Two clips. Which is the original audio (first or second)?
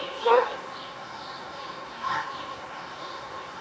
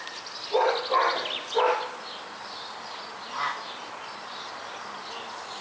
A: second